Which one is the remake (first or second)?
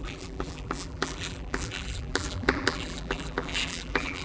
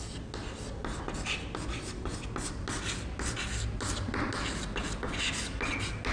first